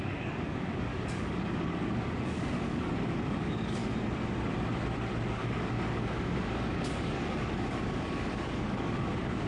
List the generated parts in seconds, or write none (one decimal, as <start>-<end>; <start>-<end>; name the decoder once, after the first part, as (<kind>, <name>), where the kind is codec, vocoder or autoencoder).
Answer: 0.0-3.8 (codec, DAC); 5.3-9.5